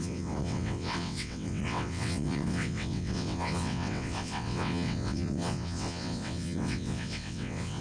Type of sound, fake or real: fake